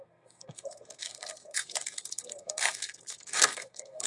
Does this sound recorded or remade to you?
remade